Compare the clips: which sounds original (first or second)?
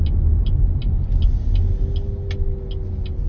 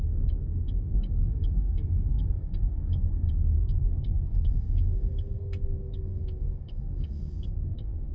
first